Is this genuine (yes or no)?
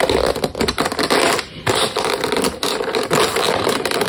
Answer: yes